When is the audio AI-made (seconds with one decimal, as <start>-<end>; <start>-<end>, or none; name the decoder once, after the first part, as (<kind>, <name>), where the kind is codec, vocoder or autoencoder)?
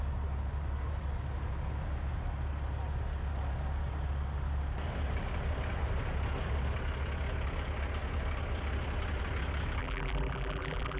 9.8-11.0 (vocoder, BigVGAN v2)